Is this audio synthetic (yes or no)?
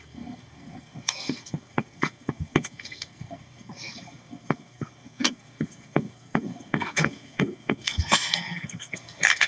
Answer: yes